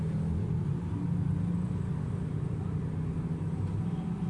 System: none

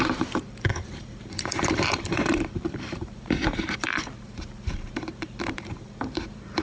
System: vocoder, BigVGAN v2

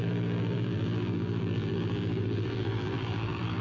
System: vocoder, BigVGAN v2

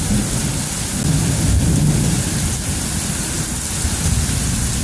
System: none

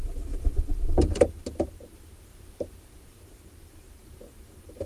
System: vocoder, BigVGAN v2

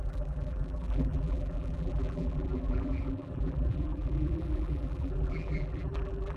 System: vocoder, BigVGAN v2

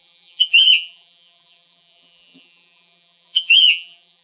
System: vocoder, BigVGAN v2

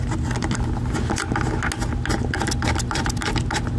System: none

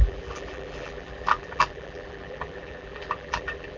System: vocoder, BigVGAN v2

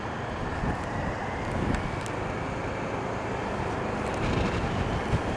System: none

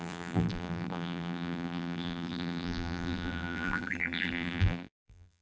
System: vocoder, BigVGAN v2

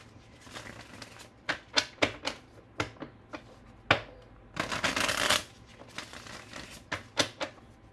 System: none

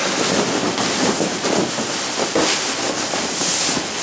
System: none